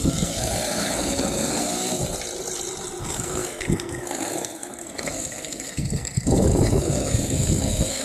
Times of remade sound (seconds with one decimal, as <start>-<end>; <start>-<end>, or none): 0.0-2.0; 3.0-8.0